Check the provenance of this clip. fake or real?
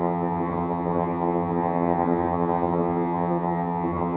fake